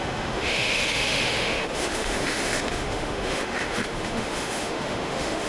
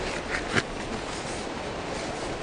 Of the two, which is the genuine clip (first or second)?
second